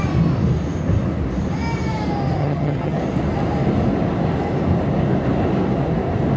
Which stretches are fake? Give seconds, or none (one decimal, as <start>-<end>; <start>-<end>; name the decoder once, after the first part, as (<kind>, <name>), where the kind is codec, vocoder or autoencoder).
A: 2.4-3.0 (vocoder, HiFi-GAN)